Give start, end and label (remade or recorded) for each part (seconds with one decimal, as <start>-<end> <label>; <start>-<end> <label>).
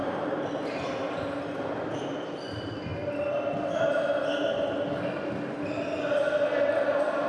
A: 0.0-0.9 remade; 0.9-7.3 recorded